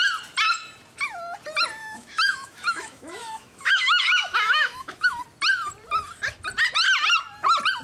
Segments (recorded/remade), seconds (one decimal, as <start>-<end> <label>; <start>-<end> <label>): 0.0-1.8 recorded; 1.8-5.2 remade; 5.2-7.8 recorded